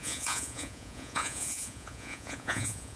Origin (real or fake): fake